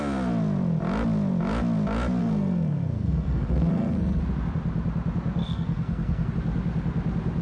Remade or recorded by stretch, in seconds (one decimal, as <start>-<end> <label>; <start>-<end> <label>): 0.0-2.2 recorded; 2.2-4.2 remade; 4.2-5.4 recorded; 5.4-6.3 remade; 6.3-7.4 recorded